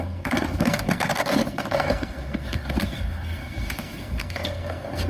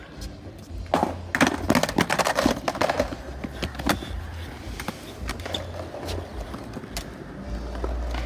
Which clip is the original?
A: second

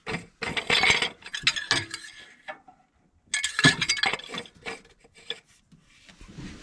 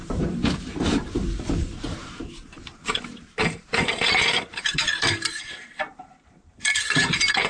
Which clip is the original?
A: first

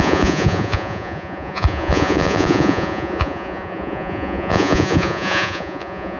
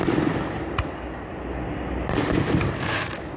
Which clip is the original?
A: second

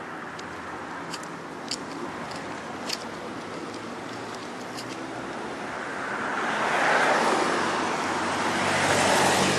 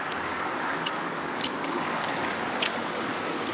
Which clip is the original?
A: first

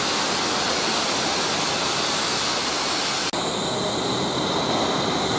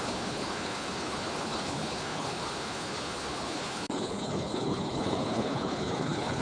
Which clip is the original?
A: first